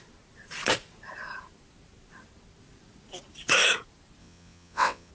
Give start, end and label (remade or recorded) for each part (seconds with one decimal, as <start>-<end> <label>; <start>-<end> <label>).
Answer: 0.0-4.2 recorded; 4.2-5.1 remade